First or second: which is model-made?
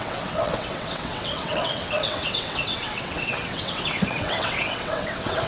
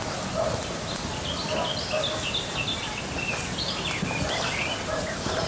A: first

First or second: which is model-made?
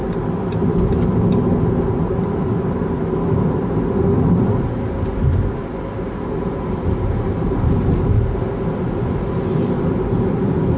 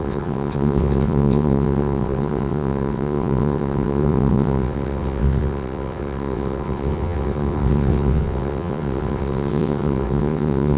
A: second